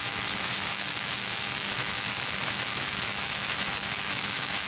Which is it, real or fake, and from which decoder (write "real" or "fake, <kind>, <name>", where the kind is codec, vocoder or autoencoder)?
fake, autoencoder, DAC-VAE